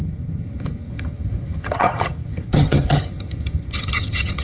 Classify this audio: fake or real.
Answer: fake